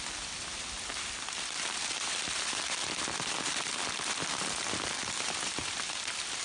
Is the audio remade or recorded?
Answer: recorded